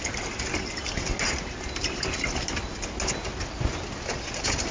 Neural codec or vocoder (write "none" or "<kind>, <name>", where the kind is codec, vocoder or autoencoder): none